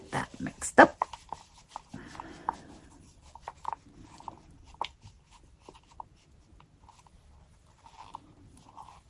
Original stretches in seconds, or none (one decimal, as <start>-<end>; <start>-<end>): 0.0-9.1